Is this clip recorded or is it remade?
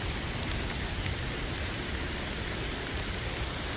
remade